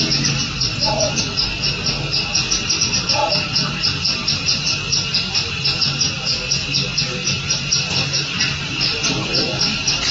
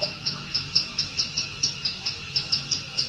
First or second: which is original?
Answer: first